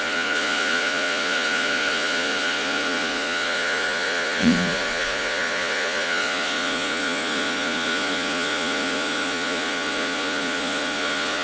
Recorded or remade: remade